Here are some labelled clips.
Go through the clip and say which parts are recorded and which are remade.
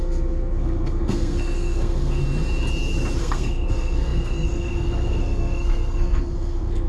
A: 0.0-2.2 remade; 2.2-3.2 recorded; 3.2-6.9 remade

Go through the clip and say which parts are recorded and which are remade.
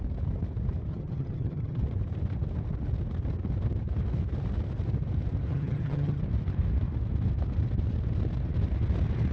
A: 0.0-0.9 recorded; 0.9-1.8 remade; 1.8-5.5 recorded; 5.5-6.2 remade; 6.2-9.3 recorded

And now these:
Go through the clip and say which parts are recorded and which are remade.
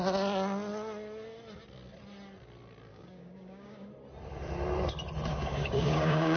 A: 0.0-2.9 recorded; 2.9-3.9 remade; 3.9-5.3 recorded; 5.3-6.4 remade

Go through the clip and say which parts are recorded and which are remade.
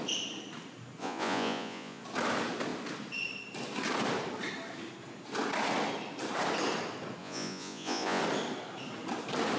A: 0.0-1.0 recorded; 1.0-2.0 remade; 2.0-7.2 recorded; 7.2-8.2 remade; 8.2-9.6 recorded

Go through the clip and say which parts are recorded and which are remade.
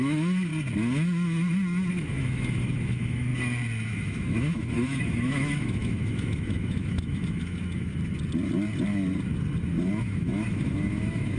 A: 0.0-0.5 remade; 0.5-1.9 recorded; 1.9-3.3 remade; 3.3-3.9 recorded; 3.9-7.9 remade; 7.9-10.0 recorded; 10.0-11.4 remade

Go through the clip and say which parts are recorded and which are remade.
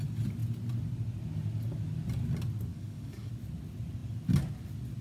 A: 0.0-2.7 recorded; 2.7-3.3 remade; 3.3-5.0 recorded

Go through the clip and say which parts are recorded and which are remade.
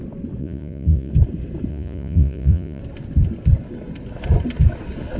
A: 0.0-0.4 recorded; 0.4-1.1 remade; 1.1-1.7 recorded; 1.7-2.8 remade; 2.8-5.2 recorded